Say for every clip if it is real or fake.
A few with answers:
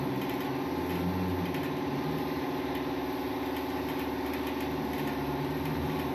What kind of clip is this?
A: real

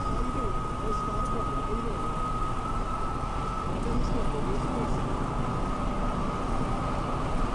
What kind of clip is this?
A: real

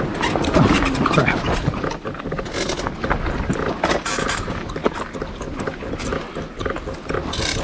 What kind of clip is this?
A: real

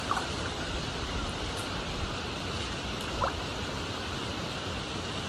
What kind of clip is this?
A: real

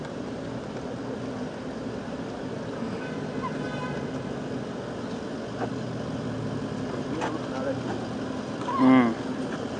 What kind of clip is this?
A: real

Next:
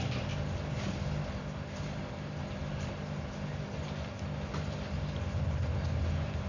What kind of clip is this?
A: real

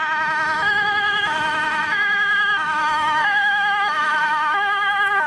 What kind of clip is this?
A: fake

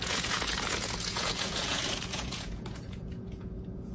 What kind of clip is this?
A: fake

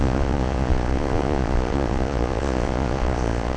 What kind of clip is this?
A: fake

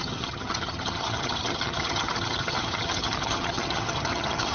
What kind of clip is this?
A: fake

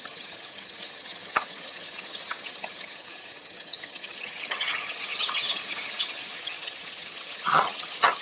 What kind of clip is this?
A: fake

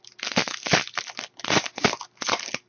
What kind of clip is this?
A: real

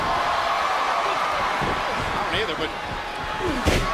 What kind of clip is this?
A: real